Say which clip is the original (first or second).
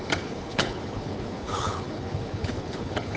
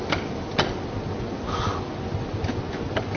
second